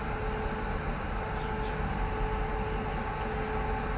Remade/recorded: recorded